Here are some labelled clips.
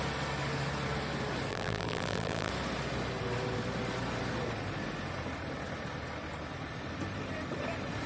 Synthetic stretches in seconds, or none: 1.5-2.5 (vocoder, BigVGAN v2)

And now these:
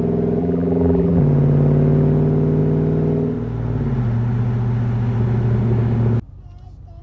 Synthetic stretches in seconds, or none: 0.4-1.2 (vocoder, BigVGAN v2)

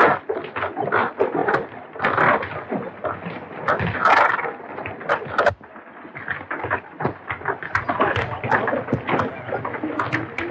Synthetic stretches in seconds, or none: 1.4-3.7 (vocoder, BigVGAN v2)

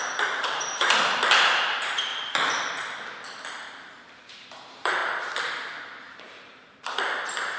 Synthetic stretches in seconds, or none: 0.0-2.1 (vocoder, BigVGAN v2); 4.3-5.0; 6.1-6.6

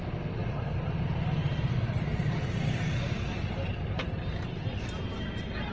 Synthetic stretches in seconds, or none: 0.4-0.9 (vocoder, BigVGAN v2); 1.4-4.8